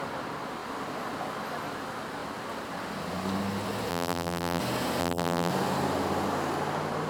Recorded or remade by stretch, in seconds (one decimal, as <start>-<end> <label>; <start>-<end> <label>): 0.0-3.9 recorded; 3.9-4.6 remade; 4.6-5.0 recorded; 5.0-5.5 remade; 5.5-7.1 recorded